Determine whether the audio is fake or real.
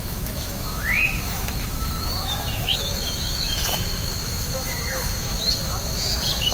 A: fake